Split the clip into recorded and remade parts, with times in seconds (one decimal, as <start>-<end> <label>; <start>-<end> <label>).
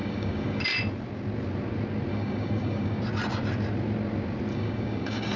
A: 0.0-0.6 remade; 0.6-2.1 recorded; 2.1-3.0 remade; 3.0-4.5 recorded; 4.5-5.4 remade